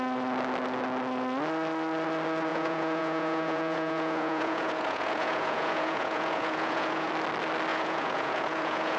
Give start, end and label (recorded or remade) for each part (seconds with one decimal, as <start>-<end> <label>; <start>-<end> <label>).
0.0-2.5 recorded; 2.5-7.1 remade; 7.1-7.7 recorded; 7.7-9.0 remade